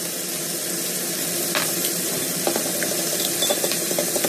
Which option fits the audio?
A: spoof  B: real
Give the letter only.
B